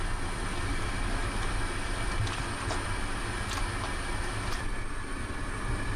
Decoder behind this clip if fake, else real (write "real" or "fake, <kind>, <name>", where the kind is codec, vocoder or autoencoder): real